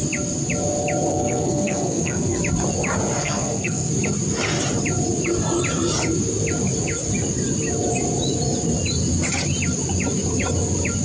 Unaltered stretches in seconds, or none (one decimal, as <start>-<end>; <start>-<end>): 0.0-1.1; 2.4-3.2; 3.9-11.0